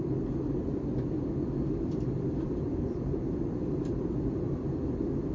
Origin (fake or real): real